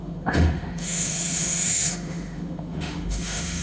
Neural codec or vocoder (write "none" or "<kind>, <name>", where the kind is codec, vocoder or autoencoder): autoencoder, DAC-VAE